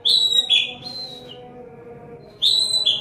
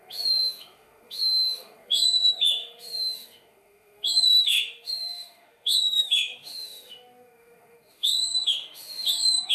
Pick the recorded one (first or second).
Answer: first